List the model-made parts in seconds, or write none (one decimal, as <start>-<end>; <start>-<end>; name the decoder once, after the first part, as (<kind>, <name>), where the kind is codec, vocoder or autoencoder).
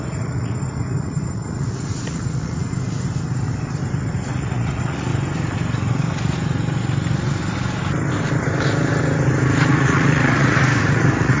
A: 0.0-2.6 (vocoder, Vocos); 3.9-5.1; 9.7-11.4